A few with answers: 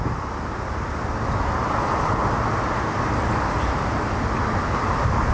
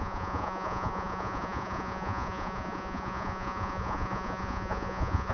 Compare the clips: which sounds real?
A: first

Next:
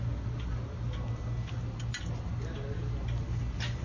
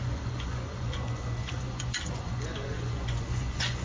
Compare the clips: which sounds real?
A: first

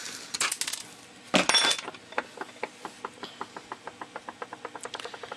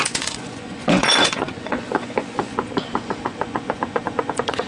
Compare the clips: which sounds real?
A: first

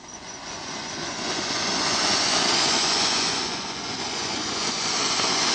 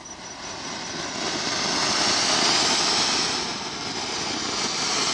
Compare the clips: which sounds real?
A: second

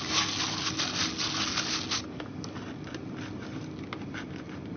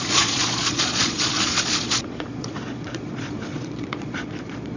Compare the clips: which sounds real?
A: first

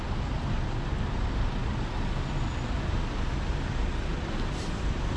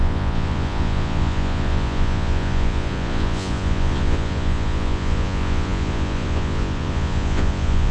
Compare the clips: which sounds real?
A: first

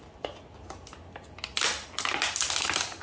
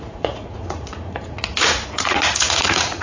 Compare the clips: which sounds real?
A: first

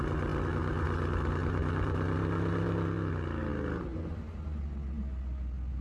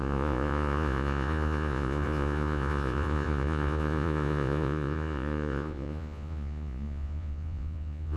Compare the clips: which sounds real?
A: first